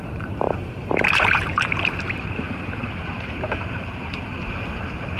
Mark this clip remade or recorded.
remade